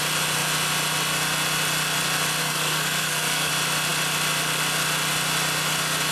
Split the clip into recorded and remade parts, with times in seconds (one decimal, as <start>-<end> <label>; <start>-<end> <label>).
0.0-2.4 recorded; 2.4-3.5 remade; 3.5-6.1 recorded